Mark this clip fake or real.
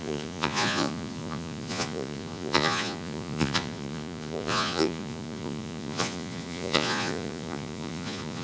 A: fake